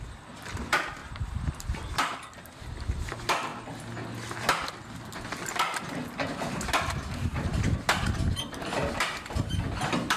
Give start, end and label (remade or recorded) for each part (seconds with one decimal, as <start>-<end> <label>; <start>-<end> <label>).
0.0-3.5 remade; 3.5-5.2 recorded; 5.2-7.5 remade; 7.5-8.3 recorded; 8.3-10.2 remade